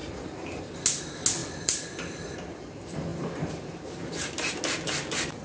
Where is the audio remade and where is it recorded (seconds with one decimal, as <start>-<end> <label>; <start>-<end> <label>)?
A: 0.0-0.6 remade; 0.6-1.4 recorded; 1.4-2.2 remade; 2.2-5.4 recorded

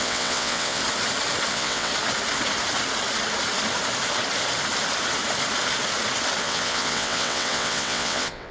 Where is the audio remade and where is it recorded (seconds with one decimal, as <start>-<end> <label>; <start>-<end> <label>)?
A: 0.0-0.8 remade; 0.8-1.5 recorded; 1.5-1.9 remade; 1.9-6.4 recorded; 6.4-8.5 remade

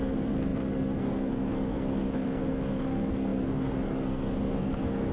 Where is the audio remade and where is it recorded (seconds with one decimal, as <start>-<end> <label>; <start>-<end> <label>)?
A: 0.0-5.1 remade

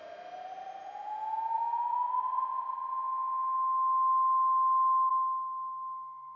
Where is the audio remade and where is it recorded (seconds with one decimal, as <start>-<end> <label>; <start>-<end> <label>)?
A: 0.0-5.1 recorded; 5.1-6.4 remade

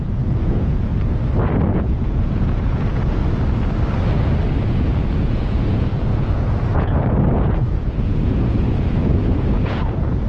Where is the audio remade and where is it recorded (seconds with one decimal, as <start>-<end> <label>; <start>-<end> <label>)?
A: 0.0-0.9 remade; 0.9-1.7 recorded; 1.7-3.2 remade; 3.2-4.7 recorded; 4.7-10.3 remade

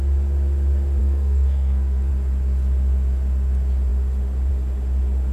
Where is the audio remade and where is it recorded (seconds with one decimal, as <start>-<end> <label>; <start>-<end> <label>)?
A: 0.0-1.0 recorded; 1.0-2.1 remade; 2.1-5.3 recorded